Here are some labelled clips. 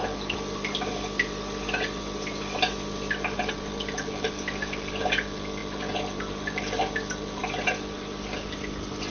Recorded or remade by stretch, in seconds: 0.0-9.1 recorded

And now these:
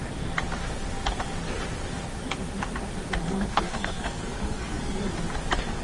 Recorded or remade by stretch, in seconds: 0.0-3.2 recorded; 3.2-5.0 remade; 5.0-5.8 recorded

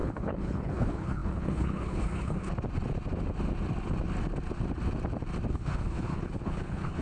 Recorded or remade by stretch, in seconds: 0.0-2.5 remade; 2.5-5.5 recorded; 5.5-7.0 remade

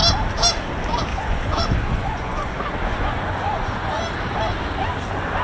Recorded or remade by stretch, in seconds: 0.0-1.1 recorded; 1.1-2.5 remade; 2.5-2.9 recorded; 2.9-4.0 remade; 4.0-5.4 recorded

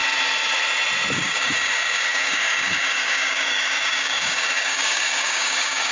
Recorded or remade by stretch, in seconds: 0.0-1.1 recorded; 1.1-5.9 remade

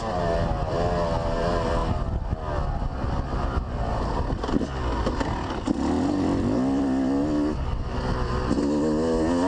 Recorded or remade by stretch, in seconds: 0.0-9.5 recorded

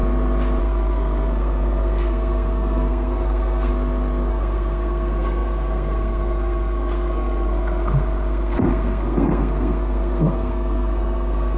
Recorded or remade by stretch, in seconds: 0.0-0.6 recorded; 0.6-3.7 remade; 3.7-4.3 recorded; 4.3-11.6 remade

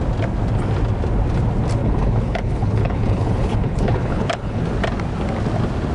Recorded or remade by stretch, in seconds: 0.0-1.8 recorded; 1.8-4.6 remade; 4.6-5.9 recorded